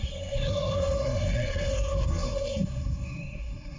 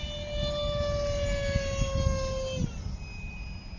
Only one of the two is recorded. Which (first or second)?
second